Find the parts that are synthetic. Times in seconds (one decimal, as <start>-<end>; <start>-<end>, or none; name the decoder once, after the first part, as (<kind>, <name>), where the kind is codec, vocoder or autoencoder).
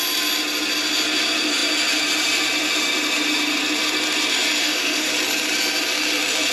4.6-5.1 (autoencoder, DAC-VAE)